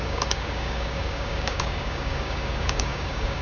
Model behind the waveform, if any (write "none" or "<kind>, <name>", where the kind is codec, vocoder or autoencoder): codec, DAC